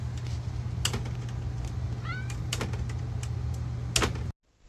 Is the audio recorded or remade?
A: recorded